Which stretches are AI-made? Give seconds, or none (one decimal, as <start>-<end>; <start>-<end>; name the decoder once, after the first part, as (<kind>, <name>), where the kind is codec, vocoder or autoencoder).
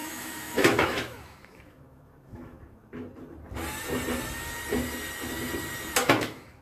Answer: 0.0-2.9 (autoencoder, DAC-VAE); 6.1-6.6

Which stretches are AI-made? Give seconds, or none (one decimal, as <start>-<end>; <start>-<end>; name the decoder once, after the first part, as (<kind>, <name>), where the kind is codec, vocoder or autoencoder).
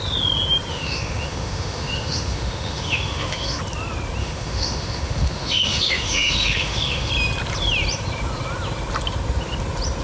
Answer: 0.7-3.6 (autoencoder, DAC-VAE); 4.2-7.1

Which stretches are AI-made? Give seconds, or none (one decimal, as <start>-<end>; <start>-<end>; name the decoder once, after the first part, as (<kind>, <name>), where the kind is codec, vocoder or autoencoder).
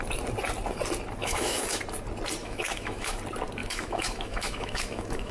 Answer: 1.2-1.8 (autoencoder, DAC-VAE); 2.4-3.2; 3.6-5.3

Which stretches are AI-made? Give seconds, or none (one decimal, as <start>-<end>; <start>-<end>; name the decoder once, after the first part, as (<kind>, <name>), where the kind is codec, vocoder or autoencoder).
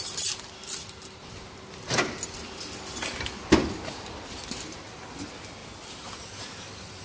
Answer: none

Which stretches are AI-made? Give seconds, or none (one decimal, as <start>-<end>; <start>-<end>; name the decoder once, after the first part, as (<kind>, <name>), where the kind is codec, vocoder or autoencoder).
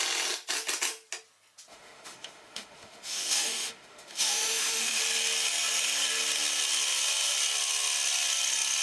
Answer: 1.7-5.0 (autoencoder, DAC-VAE)